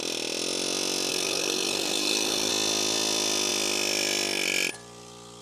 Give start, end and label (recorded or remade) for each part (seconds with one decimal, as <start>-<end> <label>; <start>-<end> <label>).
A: 0.0-1.1 recorded; 1.1-2.5 remade; 2.5-5.4 recorded